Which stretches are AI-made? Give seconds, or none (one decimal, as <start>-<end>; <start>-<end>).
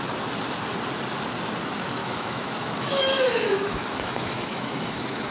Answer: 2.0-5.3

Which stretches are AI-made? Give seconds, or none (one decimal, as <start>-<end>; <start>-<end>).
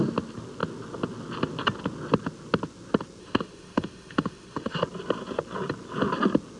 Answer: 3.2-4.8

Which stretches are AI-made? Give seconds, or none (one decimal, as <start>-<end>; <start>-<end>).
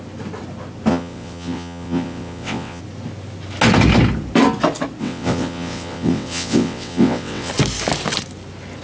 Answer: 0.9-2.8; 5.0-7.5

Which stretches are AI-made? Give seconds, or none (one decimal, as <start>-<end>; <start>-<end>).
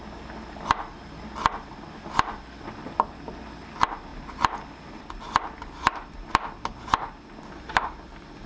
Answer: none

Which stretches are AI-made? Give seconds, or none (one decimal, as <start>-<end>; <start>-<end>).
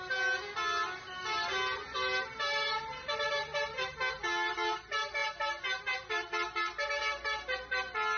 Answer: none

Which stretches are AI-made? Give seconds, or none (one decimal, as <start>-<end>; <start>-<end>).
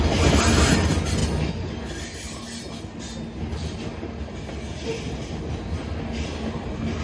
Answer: none